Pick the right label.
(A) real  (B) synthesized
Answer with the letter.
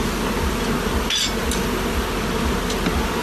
A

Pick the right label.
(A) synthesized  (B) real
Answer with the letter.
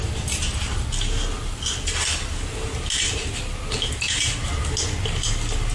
B